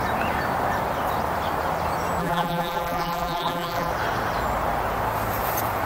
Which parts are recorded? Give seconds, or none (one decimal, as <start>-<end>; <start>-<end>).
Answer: 0.0-2.2; 3.9-5.9